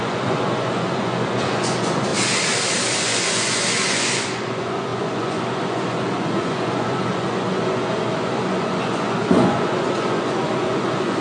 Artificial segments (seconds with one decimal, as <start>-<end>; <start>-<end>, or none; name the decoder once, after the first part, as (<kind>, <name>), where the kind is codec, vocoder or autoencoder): 0.0-2.1 (vocoder, Vocos); 3.0-11.2